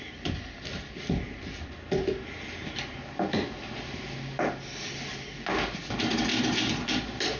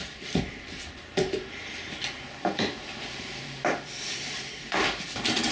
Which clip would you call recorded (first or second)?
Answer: first